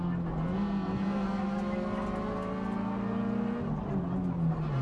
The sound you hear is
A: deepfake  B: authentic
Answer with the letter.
B